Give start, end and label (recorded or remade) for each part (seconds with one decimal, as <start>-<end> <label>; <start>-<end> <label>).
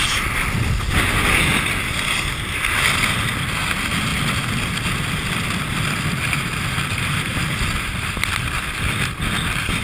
0.0-4.1 recorded; 4.1-7.5 remade; 7.5-9.8 recorded